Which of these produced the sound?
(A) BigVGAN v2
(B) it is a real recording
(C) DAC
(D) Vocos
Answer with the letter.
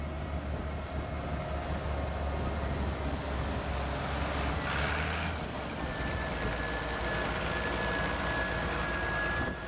B